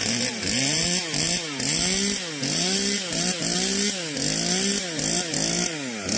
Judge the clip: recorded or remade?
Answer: recorded